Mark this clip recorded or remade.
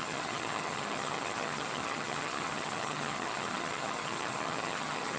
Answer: remade